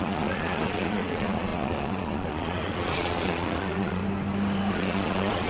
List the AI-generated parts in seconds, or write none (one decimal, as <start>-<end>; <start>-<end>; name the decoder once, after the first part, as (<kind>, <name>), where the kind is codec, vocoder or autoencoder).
0.0-4.0 (vocoder, Vocos); 4.7-5.5